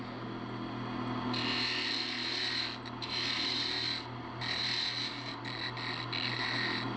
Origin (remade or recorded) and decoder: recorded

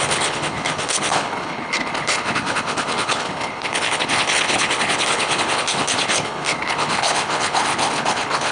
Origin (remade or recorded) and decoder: remade, codec, HILCodec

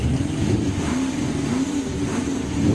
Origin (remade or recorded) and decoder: recorded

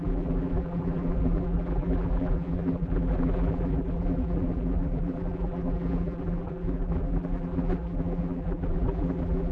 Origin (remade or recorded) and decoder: remade, vocoder, BigVGAN v2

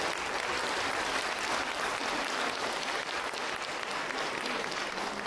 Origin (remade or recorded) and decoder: recorded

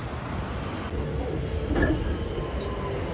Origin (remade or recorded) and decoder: recorded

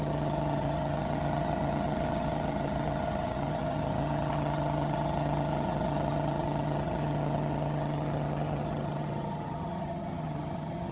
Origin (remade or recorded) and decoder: remade, vocoder, HiFi-GAN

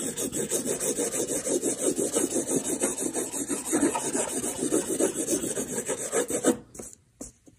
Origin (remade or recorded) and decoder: recorded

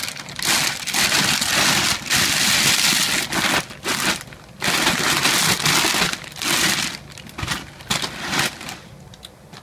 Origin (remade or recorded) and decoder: recorded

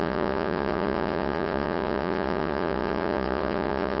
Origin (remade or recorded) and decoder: remade, vocoder, Vocos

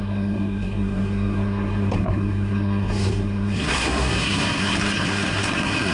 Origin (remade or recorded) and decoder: remade, codec, SNAC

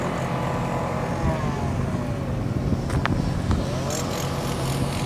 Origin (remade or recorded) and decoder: recorded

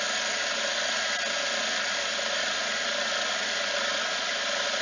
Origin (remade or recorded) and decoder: recorded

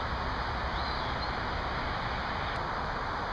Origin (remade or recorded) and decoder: recorded